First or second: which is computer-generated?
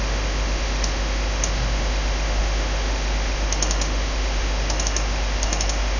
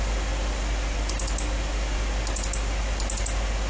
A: first